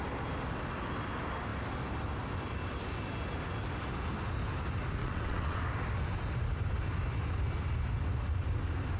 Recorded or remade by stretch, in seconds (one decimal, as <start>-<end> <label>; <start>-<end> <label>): 0.0-5.0 recorded; 5.0-5.6 remade; 5.6-9.0 recorded